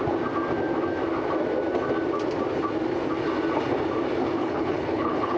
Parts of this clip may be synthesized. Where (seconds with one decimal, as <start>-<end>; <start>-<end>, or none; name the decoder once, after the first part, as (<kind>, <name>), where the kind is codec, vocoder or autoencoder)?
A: 4.4-5.4 (codec, HILCodec)